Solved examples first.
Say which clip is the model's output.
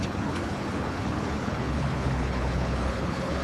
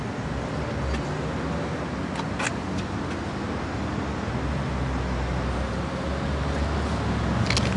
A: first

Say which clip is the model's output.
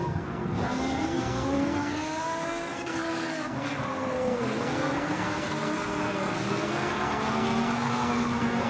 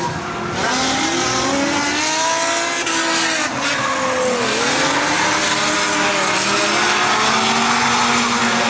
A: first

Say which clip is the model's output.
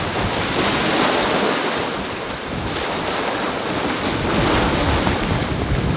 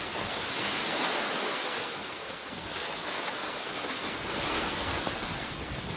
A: second